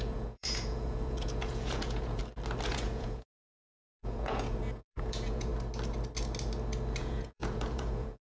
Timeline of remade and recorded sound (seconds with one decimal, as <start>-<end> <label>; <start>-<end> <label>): 0.0-2.2 remade; 2.2-2.7 recorded; 2.7-5.5 remade; 5.5-7.0 recorded; 7.0-8.4 remade